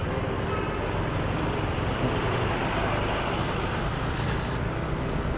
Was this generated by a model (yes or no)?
no